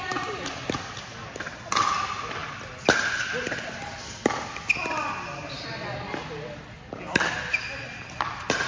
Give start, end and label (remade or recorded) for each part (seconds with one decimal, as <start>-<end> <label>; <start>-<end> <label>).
0.0-8.7 recorded